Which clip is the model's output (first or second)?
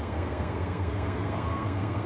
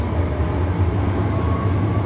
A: first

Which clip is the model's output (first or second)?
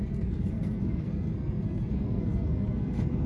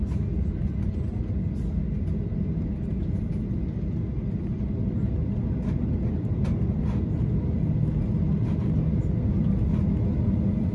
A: first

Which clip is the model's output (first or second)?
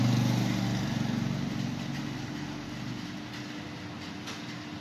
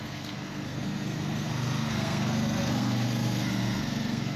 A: second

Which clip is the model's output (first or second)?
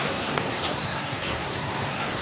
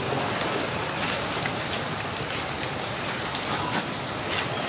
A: first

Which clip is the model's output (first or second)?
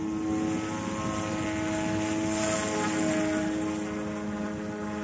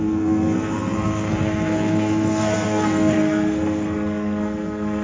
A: second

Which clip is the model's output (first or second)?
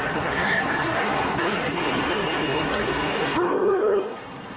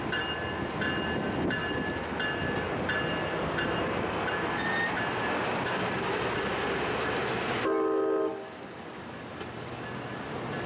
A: first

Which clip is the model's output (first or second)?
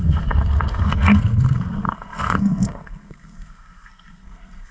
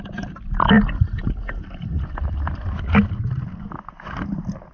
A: first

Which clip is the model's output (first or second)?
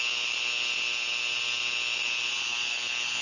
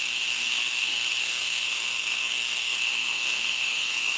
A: second